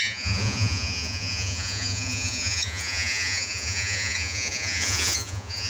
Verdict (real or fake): fake